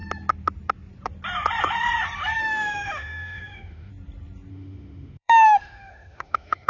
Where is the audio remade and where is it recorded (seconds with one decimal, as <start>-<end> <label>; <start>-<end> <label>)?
0.0-2.4 recorded; 2.4-3.9 remade; 3.9-4.5 recorded; 4.5-6.7 remade